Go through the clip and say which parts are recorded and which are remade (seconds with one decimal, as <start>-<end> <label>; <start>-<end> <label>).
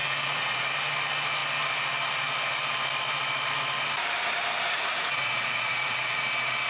0.0-0.7 remade; 0.7-4.7 recorded; 4.7-6.2 remade; 6.2-6.7 recorded